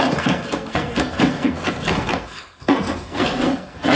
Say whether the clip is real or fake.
fake